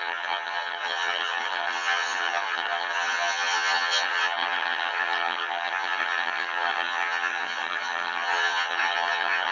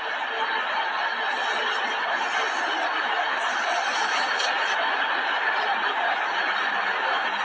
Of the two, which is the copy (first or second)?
first